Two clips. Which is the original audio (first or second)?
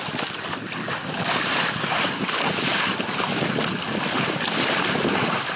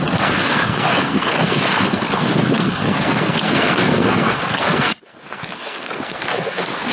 first